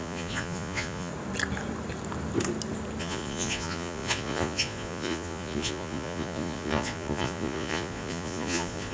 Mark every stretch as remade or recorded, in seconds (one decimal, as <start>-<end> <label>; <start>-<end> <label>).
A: 0.0-1.1 remade; 1.1-3.0 recorded; 3.0-8.9 remade